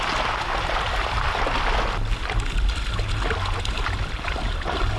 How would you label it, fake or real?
real